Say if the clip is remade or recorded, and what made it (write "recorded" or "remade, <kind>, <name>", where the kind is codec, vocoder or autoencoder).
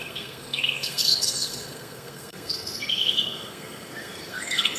remade, codec, SNAC